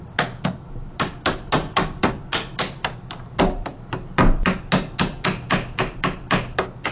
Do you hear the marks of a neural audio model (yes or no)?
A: no